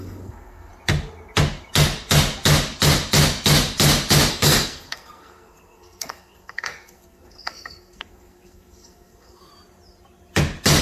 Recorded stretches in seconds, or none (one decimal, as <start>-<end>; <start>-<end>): 0.7-4.3; 9.5-10.8